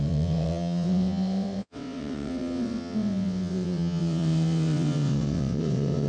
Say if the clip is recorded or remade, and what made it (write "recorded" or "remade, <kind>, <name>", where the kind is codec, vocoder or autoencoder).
remade, vocoder, WaveNeXt